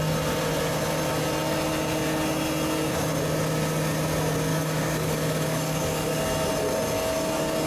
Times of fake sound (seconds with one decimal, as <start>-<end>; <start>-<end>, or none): 4.5-6.2